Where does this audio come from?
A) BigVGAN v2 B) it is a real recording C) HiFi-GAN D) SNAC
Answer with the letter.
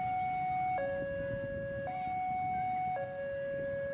B